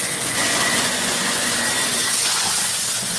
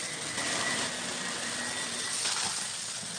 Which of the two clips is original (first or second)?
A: second